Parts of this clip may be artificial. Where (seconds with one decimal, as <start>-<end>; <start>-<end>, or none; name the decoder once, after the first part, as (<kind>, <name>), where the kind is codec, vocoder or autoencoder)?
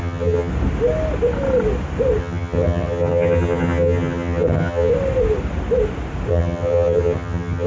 0.0-0.5 (vocoder, HiFi-GAN); 2.2-4.9; 6.3-7.7